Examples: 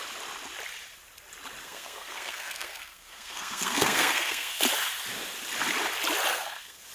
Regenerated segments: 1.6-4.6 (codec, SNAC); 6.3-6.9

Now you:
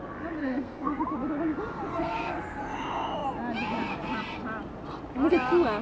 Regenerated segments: 0.4-1.0 (codec, SNAC); 1.9-2.6

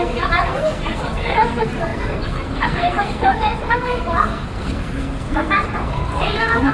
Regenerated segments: 0.0-6.7 (codec, SNAC)

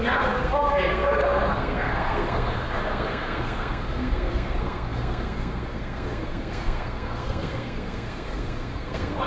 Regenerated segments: 0.0-9.3 (codec, SNAC)

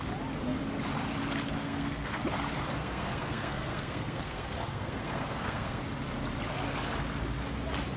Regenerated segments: 1.6-2.2 (codec, SNAC); 2.8-5.8

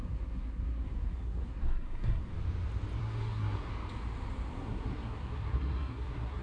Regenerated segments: 0.0-2.3 (codec, SNAC); 3.0-3.7; 4.5-6.4